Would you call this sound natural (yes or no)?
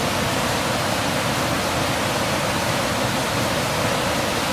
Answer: yes